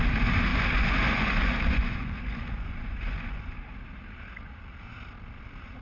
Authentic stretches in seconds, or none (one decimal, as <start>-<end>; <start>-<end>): 0.0-0.5; 3.4-5.8